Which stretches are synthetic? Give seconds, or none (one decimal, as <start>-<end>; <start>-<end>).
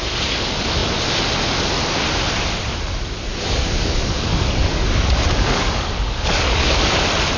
3.3-6.9